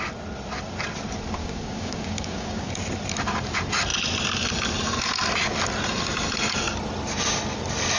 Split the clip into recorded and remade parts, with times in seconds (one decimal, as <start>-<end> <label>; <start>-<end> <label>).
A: 0.0-1.4 recorded; 1.4-2.7 remade; 2.7-8.0 recorded